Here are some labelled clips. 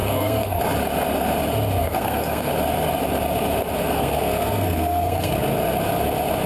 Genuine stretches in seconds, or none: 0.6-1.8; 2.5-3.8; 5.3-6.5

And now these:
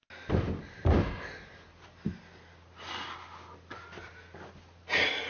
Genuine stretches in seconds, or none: 0.0-5.3

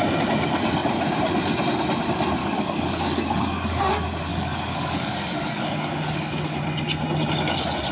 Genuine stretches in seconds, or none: 0.0-2.4; 3.9-4.3; 6.6-7.9

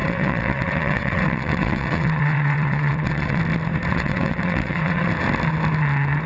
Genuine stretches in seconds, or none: 3.4-3.9; 5.1-6.3

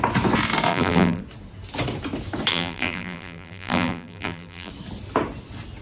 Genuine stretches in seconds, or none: 0.0-0.7; 1.2-2.5; 4.7-5.8

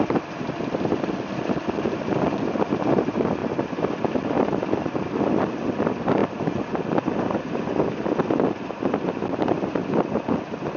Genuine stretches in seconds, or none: 0.0-10.8